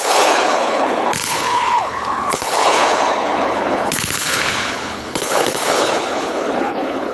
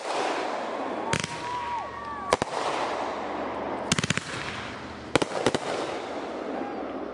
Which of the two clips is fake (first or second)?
first